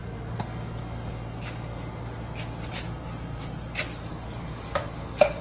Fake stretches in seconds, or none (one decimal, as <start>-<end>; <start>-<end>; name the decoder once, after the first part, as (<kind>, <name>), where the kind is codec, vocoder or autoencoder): 4.1-5.4 (codec, DAC)